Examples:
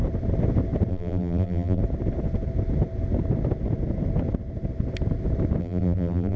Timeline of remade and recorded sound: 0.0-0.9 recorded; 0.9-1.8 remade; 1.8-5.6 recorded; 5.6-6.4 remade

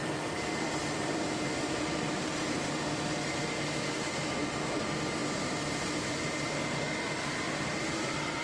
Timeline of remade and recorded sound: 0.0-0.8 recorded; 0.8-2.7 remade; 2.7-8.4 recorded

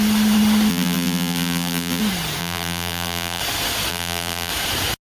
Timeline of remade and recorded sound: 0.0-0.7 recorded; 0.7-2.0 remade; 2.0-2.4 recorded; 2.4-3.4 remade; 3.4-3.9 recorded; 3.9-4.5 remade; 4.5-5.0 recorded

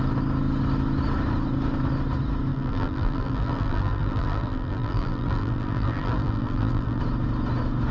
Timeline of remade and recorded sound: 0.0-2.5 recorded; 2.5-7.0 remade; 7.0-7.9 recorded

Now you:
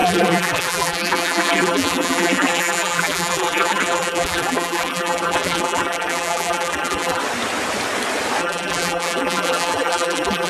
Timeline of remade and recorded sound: 0.0-7.2 remade; 7.2-8.4 recorded; 8.4-10.5 remade

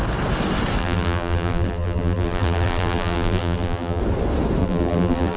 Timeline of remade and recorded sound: 0.0-0.8 recorded; 0.8-4.0 remade; 4.0-4.6 recorded; 4.6-5.4 remade

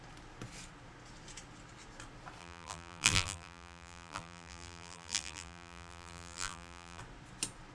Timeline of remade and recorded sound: 0.0-2.4 recorded; 2.4-7.0 remade; 7.0-7.7 recorded

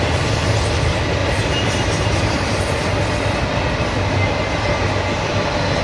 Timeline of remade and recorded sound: 0.0-1.2 recorded; 1.2-2.6 remade; 2.6-5.8 recorded